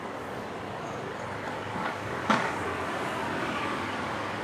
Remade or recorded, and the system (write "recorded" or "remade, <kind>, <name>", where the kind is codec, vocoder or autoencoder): remade, codec, DAC